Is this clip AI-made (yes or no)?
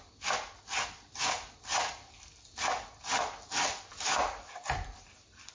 no